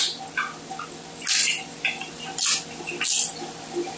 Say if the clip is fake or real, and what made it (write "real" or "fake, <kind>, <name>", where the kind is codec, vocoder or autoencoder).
real